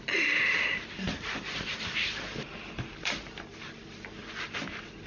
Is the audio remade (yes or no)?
yes